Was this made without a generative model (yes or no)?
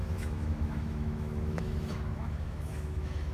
no